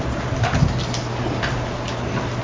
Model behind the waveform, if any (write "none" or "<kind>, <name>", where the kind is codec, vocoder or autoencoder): none